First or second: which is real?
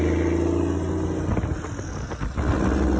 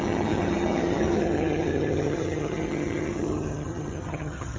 first